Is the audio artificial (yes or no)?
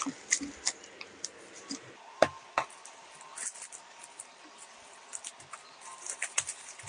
yes